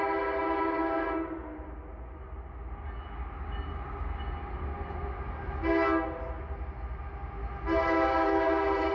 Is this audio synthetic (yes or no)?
no